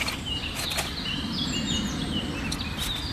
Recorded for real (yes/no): yes